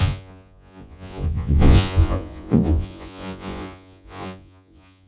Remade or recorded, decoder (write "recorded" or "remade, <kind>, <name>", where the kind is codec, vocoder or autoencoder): remade, vocoder, Vocos